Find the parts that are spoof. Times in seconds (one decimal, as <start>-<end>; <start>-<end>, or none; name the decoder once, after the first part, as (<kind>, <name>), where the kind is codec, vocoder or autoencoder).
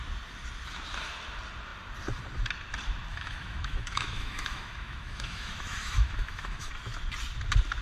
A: 3.1-6.7 (autoencoder, DAC-VAE)